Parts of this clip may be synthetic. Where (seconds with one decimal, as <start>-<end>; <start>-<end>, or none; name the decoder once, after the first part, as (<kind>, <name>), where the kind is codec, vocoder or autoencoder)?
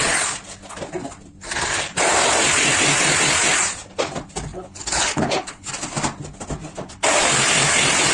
4.5-5.7 (codec, HILCodec)